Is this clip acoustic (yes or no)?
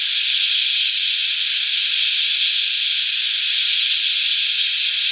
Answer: yes